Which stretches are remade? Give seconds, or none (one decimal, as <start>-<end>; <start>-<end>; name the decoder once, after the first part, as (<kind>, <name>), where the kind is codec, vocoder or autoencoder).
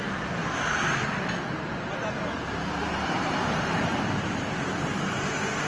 0.0-0.4 (vocoder, BigVGAN v2); 1.9-5.7